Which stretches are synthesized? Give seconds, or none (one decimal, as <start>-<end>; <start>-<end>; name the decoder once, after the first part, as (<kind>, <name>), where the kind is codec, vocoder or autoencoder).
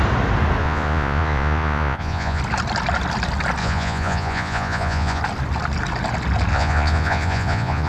0.6-2.4 (vocoder, Vocos); 3.6-5.2; 6.5-7.9